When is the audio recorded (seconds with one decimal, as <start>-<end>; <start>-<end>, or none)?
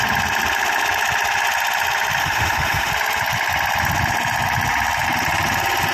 0.0-2.2; 2.9-5.9